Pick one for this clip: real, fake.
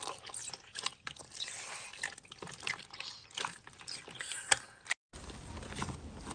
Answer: real